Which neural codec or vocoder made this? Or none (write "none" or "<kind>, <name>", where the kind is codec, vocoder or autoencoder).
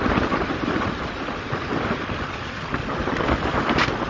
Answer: none